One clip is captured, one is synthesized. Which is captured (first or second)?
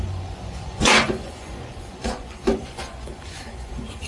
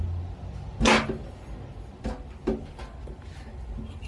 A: second